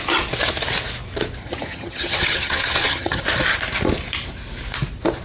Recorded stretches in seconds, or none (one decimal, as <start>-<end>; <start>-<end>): 0.0-1.4; 3.2-5.2